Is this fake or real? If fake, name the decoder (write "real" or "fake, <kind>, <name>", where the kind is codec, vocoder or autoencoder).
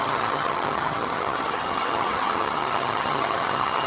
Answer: fake, vocoder, HiFi-GAN